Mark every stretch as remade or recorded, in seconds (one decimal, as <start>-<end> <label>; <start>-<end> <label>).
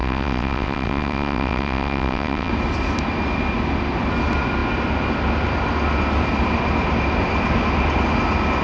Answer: 0.0-2.5 remade; 2.5-8.6 recorded